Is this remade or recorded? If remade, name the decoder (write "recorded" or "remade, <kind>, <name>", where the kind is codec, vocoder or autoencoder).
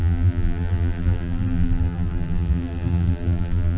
remade, vocoder, BigVGAN v2